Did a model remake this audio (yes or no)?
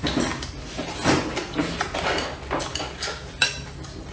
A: no